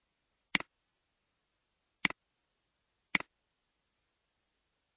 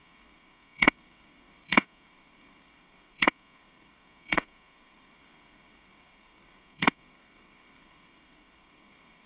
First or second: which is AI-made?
second